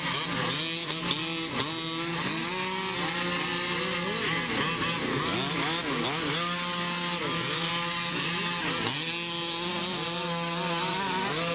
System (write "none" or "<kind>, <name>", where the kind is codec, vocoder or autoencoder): none